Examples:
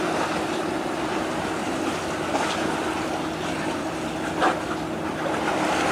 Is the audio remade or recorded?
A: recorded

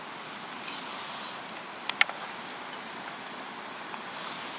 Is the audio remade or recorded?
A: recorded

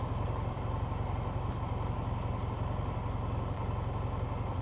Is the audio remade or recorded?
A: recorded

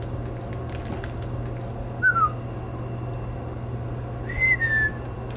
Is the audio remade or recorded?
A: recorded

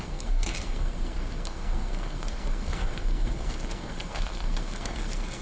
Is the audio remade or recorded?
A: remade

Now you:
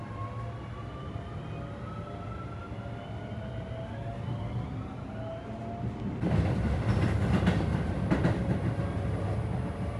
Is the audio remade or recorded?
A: recorded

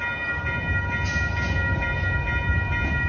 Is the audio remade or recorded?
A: recorded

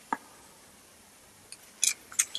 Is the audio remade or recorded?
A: recorded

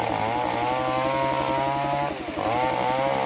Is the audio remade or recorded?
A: recorded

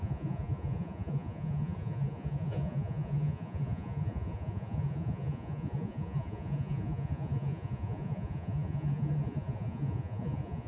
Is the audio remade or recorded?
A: remade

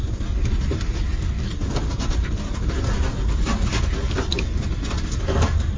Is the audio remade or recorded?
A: recorded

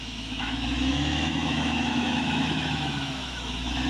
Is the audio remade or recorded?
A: remade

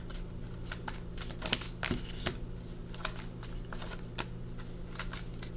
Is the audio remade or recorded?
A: recorded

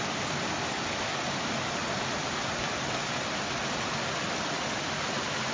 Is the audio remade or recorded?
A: recorded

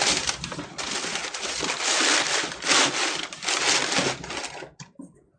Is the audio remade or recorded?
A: recorded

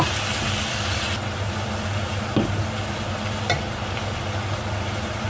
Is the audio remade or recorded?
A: recorded